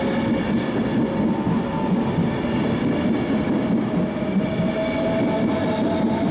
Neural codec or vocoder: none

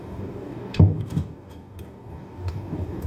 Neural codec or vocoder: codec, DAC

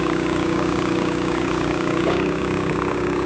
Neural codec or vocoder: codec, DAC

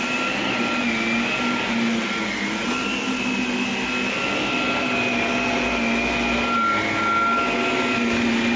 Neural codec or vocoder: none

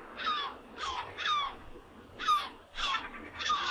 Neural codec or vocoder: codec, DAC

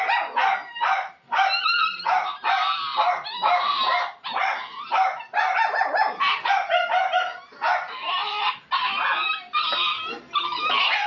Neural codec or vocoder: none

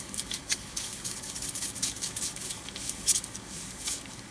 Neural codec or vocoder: codec, DAC